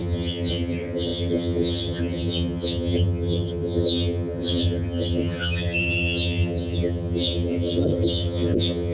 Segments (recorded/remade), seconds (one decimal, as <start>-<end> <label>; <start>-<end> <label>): 0.0-8.9 remade